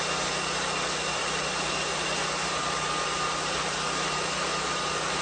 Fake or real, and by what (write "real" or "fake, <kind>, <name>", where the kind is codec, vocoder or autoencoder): real